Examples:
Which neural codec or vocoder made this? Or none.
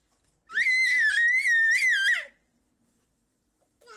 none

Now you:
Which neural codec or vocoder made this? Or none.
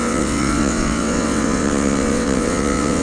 vocoder, WaveNeXt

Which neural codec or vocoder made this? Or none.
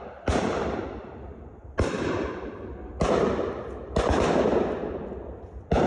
none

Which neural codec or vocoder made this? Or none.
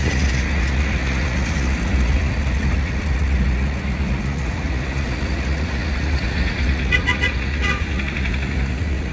vocoder, Vocos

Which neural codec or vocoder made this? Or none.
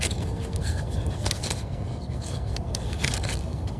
codec, SNAC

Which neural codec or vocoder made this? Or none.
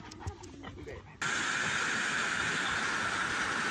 none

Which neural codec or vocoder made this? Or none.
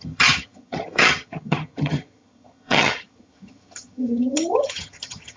vocoder, HiFi-GAN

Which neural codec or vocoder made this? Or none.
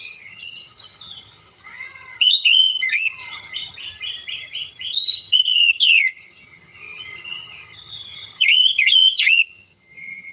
vocoder, HiFi-GAN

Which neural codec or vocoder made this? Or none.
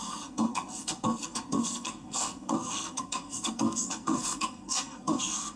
codec, SNAC